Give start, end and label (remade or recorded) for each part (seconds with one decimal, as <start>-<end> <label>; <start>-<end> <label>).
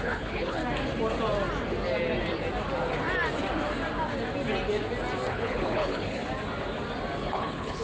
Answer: 0.0-0.6 remade; 0.6-5.3 recorded; 5.3-6.2 remade; 6.2-7.3 recorded; 7.3-7.8 remade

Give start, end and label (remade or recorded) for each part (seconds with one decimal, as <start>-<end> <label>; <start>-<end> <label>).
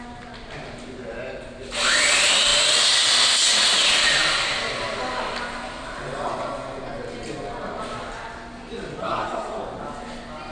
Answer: 0.0-9.0 recorded; 9.0-9.6 remade; 9.6-10.5 recorded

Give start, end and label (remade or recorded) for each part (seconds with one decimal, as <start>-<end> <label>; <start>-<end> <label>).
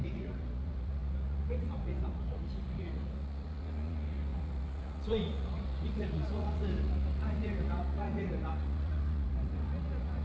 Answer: 0.0-10.2 remade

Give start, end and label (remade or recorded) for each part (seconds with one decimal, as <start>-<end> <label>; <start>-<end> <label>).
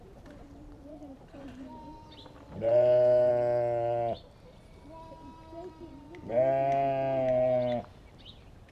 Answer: 0.0-3.3 remade; 3.3-7.9 recorded; 7.9-8.7 remade